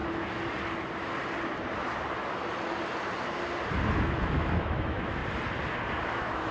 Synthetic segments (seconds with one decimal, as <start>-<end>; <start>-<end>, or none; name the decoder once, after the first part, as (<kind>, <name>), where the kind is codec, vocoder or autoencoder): 3.9-5.2 (autoencoder, DAC-VAE); 6.1-6.5